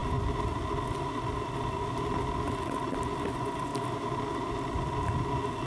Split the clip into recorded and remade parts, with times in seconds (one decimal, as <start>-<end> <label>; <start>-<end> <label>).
0.0-3.3 recorded; 3.3-3.7 remade; 3.7-5.7 recorded